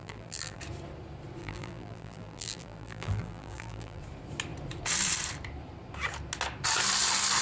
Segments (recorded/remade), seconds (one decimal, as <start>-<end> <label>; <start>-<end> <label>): 0.0-0.6 remade; 0.6-1.4 recorded; 1.4-4.0 remade; 4.0-7.4 recorded